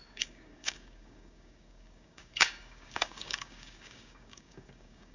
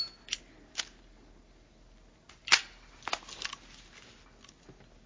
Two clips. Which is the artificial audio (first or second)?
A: first